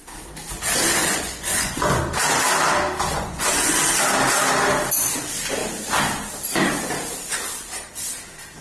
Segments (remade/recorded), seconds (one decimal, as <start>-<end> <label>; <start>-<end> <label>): 0.0-1.0 recorded; 1.0-2.0 remade; 2.0-3.1 recorded; 3.1-3.8 remade; 3.8-8.6 recorded

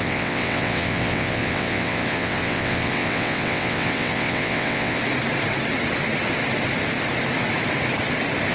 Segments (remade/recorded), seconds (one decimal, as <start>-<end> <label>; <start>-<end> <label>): 0.0-5.0 remade; 5.0-8.5 recorded